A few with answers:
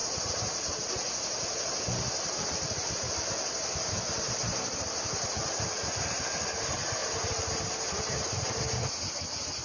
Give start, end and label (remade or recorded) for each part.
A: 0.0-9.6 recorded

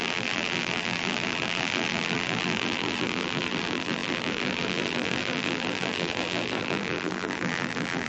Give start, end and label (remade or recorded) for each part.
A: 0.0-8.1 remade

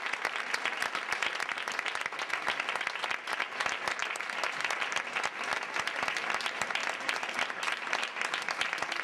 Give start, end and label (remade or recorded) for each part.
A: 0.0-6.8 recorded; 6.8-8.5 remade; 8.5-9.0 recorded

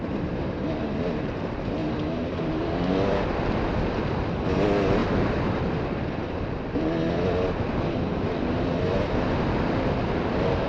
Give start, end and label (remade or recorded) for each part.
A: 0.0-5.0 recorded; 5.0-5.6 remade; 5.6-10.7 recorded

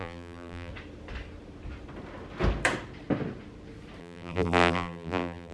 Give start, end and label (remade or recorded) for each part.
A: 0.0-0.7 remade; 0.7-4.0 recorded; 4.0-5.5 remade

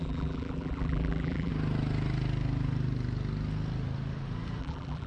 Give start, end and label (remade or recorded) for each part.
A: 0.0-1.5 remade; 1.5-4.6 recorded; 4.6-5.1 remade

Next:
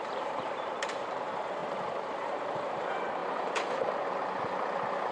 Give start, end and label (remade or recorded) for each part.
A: 0.0-3.2 remade; 3.2-5.1 recorded